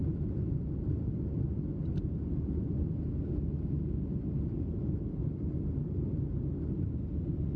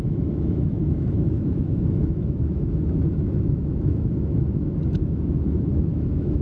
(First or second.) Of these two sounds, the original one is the first